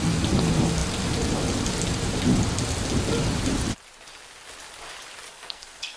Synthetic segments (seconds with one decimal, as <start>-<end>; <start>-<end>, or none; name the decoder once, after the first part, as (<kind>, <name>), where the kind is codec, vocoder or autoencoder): 5.3-6.0 (codec, SNAC)